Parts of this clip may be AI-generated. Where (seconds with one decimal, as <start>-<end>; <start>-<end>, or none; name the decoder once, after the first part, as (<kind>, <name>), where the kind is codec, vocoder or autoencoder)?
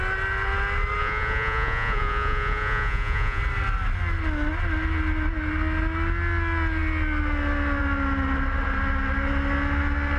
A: 1.0-3.4 (vocoder, Vocos)